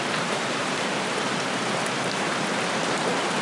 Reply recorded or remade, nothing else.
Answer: remade